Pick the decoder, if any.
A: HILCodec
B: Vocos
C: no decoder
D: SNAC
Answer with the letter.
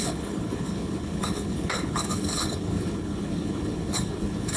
A